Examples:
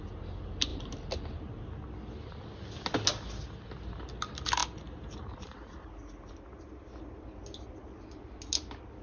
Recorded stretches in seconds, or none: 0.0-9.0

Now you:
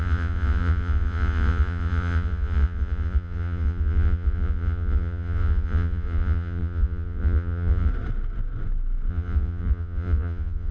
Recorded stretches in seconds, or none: 7.9-9.1